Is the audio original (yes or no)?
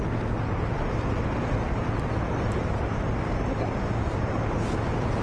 yes